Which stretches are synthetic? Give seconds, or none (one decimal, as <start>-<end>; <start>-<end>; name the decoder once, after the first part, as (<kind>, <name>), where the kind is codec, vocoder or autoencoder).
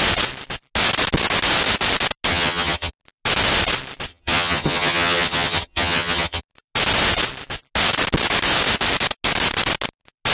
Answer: 2.3-2.9 (vocoder, HiFi-GAN); 4.1-6.4